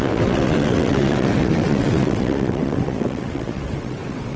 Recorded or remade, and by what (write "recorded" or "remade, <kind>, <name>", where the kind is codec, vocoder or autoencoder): remade, vocoder, WaveNeXt